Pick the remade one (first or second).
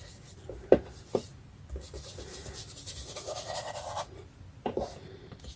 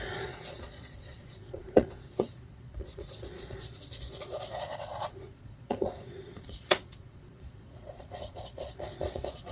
second